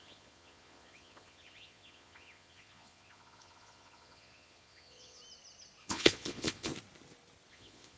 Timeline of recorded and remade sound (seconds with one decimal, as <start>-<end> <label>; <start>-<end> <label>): 0.0-5.2 remade; 5.2-5.8 recorded; 5.8-6.7 remade; 6.7-7.5 recorded; 7.5-8.0 remade